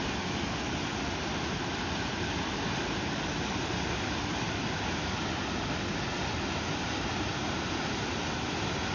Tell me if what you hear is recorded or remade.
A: recorded